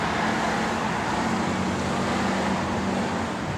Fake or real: real